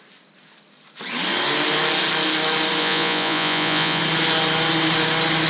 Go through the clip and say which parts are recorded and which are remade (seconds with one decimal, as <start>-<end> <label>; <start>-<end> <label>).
0.0-2.8 recorded; 2.8-4.0 remade; 4.0-5.5 recorded